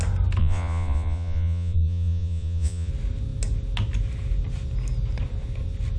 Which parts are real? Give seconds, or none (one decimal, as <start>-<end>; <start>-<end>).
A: 0.0-0.4; 2.9-6.0